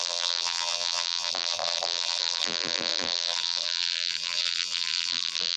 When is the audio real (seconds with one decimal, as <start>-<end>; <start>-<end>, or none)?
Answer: none